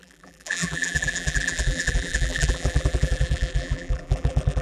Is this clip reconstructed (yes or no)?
yes